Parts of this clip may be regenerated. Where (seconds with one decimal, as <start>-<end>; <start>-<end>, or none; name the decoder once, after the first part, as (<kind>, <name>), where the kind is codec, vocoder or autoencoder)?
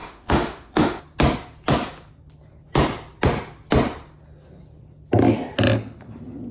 0.0-1.0 (autoencoder, DAC-VAE)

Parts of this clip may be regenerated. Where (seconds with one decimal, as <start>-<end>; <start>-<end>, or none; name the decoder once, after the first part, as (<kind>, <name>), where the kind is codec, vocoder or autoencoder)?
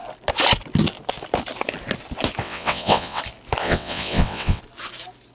2.4-3.2 (vocoder, WaveNeXt); 3.6-4.6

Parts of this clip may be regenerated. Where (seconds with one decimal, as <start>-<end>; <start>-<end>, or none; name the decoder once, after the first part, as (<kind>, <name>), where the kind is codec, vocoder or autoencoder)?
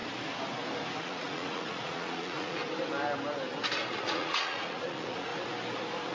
1.0-2.6 (vocoder, Vocos); 3.9-5.3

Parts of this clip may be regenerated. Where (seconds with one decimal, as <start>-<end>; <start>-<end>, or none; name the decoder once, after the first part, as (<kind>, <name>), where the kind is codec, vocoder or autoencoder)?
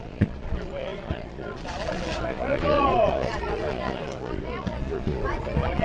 0.0-5.8 (vocoder, Vocos)